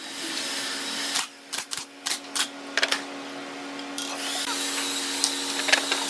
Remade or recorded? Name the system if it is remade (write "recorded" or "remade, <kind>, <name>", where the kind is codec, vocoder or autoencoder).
recorded